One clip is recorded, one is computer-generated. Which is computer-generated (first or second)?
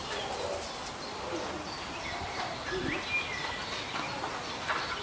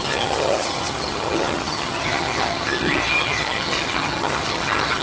second